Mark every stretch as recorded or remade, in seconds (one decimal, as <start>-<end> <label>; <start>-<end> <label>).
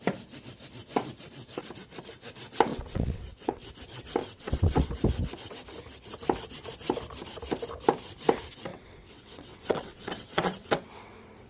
0.0-2.7 recorded; 2.7-3.7 remade; 3.7-4.2 recorded; 4.2-4.9 remade; 4.9-8.7 recorded; 8.7-11.5 remade